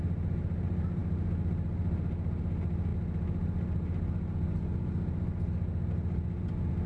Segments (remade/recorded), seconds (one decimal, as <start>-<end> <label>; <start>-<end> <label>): 0.0-6.9 recorded